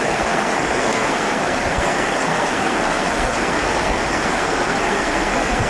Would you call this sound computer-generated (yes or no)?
yes